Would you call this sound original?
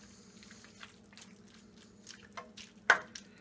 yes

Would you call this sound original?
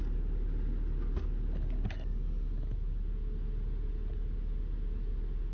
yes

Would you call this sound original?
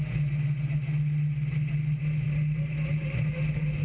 yes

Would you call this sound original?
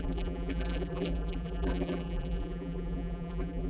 no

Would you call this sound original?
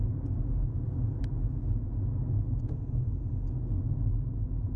yes